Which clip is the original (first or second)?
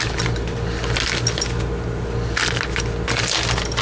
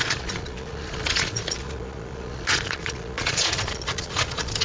first